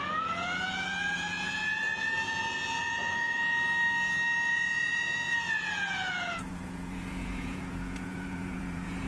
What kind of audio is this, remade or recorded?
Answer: remade